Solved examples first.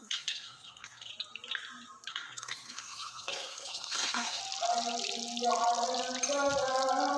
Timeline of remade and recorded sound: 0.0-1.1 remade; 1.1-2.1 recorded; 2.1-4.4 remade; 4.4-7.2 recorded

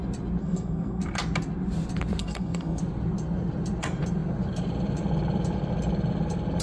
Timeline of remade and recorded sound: 0.0-0.4 recorded; 0.4-1.0 remade; 1.0-2.2 recorded; 2.2-2.8 remade; 2.8-6.6 recorded

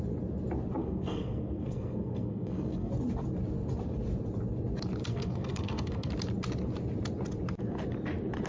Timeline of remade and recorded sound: 0.0-0.8 recorded; 0.8-2.9 remade; 2.9-5.1 recorded; 5.1-6.1 remade; 6.1-8.5 recorded

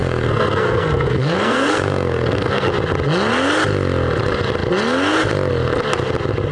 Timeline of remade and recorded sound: 0.0-2.7 remade; 2.7-6.5 recorded

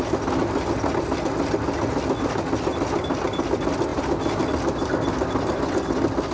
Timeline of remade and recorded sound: 0.0-6.3 recorded

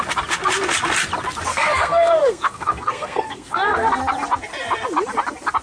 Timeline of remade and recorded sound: 0.0-1.5 recorded; 1.5-4.0 remade; 4.0-5.6 recorded

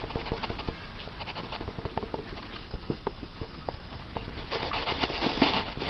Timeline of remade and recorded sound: 0.0-2.6 recorded; 2.6-4.0 remade; 4.0-5.9 recorded